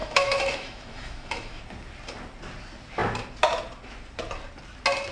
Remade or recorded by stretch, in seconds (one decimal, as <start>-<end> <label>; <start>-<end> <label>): 0.0-1.6 remade; 1.6-5.1 recorded